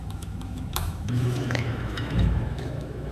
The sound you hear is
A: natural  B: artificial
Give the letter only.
B